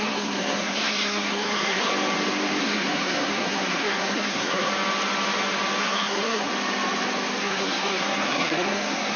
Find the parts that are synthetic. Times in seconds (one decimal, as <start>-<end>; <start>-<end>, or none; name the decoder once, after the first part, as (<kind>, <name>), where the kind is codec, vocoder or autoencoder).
0.0-1.9 (codec, SNAC); 2.6-4.7; 5.8-6.5; 7.4-9.2